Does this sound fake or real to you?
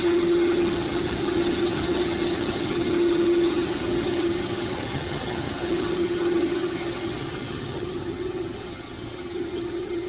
fake